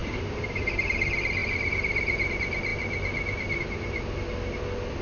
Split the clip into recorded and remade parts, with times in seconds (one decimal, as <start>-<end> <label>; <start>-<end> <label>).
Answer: 0.0-0.9 remade; 0.9-1.4 recorded; 1.4-2.3 remade; 2.3-5.0 recorded